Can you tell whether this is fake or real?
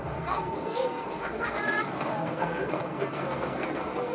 fake